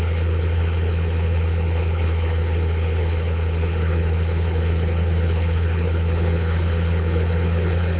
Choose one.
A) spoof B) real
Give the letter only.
A